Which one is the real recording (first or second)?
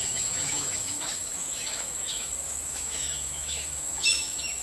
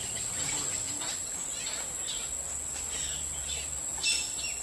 second